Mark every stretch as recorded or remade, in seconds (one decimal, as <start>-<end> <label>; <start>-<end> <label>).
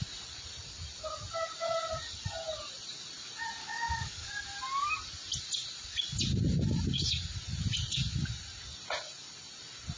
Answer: 0.0-3.6 recorded; 3.6-4.3 remade; 4.3-10.0 recorded